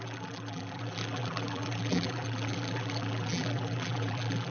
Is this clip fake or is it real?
fake